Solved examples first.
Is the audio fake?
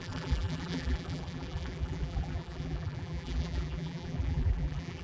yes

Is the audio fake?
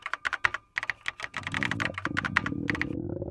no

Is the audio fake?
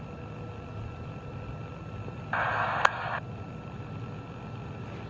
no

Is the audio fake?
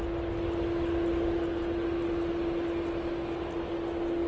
no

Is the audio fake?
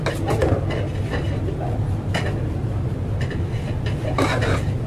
no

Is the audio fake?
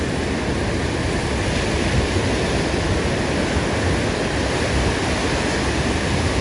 no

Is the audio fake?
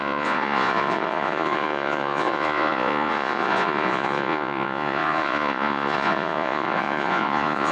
yes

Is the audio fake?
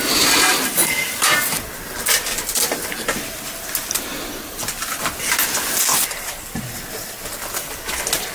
no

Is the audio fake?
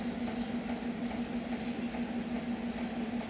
no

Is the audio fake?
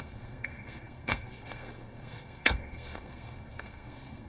yes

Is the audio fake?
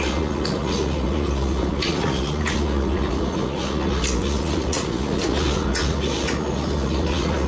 yes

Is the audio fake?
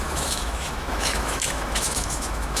yes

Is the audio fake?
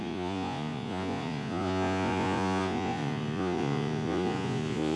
yes